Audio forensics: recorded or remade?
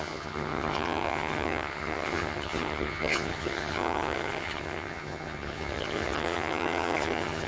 remade